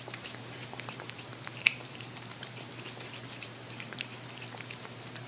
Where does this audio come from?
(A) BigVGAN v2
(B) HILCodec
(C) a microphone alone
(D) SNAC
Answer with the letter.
A